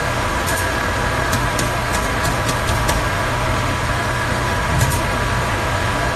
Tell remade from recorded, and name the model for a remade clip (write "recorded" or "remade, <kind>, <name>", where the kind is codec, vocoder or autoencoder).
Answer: remade, autoencoder, DAC-VAE